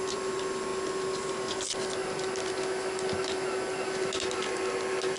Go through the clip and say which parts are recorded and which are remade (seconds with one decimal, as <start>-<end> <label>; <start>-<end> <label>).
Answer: 0.0-5.2 recorded